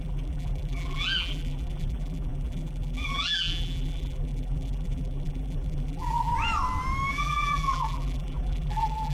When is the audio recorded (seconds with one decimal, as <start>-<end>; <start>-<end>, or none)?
6.3-7.1